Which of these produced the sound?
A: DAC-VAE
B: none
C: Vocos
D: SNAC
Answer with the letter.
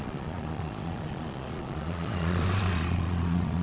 C